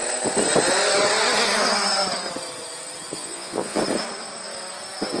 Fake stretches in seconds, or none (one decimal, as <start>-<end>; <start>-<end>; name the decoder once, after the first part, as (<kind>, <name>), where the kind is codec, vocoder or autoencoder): 3.2-3.8 (vocoder, Vocos)